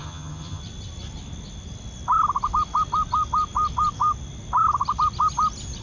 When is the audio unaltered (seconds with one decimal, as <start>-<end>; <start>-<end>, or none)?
0.6-5.8